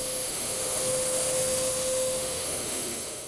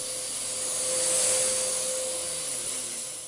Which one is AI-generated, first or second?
first